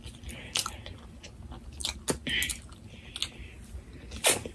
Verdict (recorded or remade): recorded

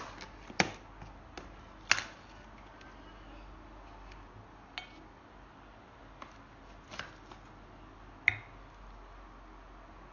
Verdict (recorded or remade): recorded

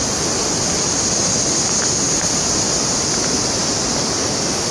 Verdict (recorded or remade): recorded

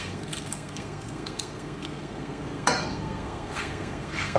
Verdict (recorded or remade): remade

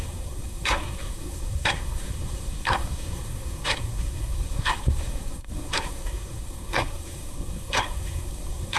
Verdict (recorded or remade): remade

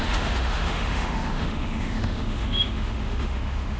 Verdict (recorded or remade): remade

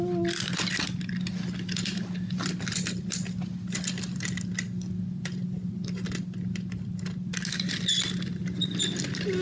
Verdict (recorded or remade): recorded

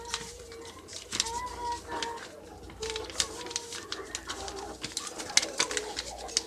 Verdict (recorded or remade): recorded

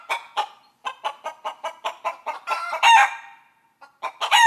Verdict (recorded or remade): recorded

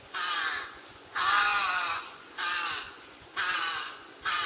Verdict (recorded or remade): remade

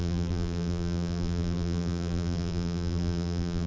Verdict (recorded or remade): remade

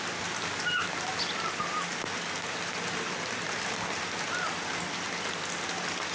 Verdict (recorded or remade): recorded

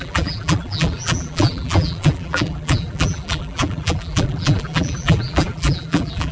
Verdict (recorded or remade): remade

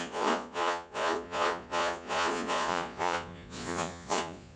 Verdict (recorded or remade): remade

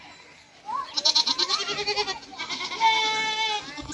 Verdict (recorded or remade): recorded